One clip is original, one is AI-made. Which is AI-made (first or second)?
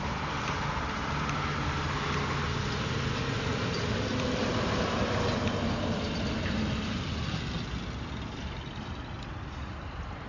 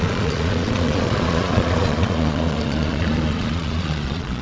second